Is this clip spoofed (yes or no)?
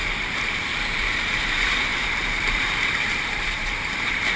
yes